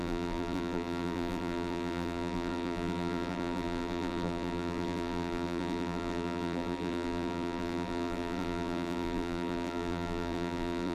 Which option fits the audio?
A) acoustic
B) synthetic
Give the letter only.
B